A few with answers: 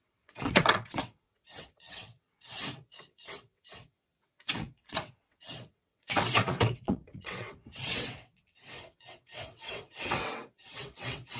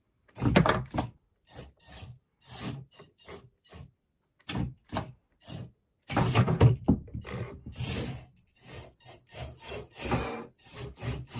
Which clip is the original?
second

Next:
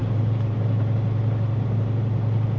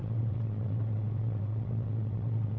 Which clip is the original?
first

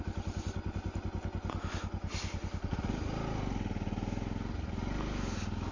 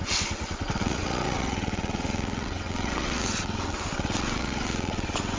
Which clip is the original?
first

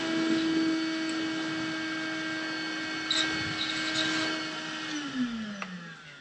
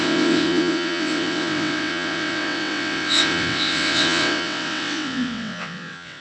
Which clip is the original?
first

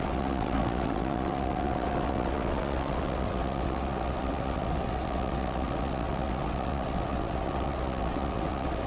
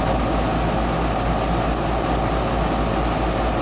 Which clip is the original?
second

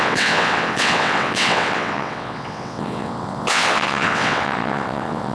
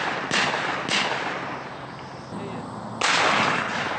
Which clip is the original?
second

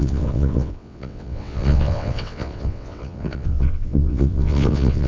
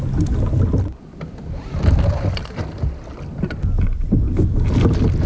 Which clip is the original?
second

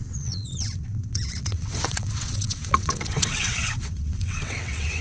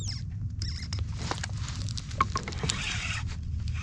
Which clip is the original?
second